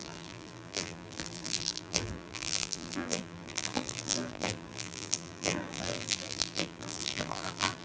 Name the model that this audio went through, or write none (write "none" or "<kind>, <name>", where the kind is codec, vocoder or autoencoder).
vocoder, BigVGAN v2